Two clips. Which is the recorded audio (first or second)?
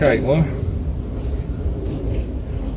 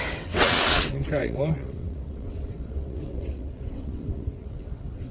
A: first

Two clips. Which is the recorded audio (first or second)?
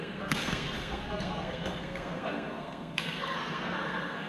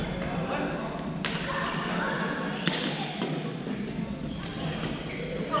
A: second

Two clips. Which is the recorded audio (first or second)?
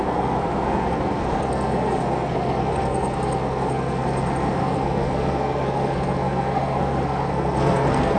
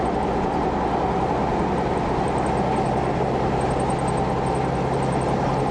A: second